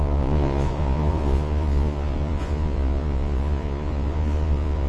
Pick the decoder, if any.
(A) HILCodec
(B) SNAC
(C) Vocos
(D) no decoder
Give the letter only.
C